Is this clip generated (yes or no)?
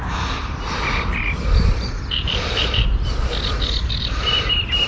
no